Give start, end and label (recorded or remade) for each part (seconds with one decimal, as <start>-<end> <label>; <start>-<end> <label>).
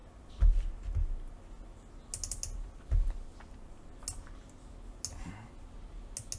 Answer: 0.0-6.4 recorded